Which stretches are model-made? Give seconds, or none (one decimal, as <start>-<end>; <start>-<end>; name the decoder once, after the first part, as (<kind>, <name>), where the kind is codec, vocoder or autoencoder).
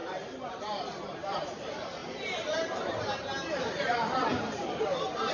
0.0-5.3 (vocoder, BigVGAN v2)